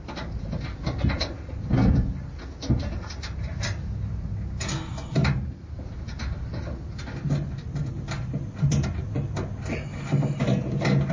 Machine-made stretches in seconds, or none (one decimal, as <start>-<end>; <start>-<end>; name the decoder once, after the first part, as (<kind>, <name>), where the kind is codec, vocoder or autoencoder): none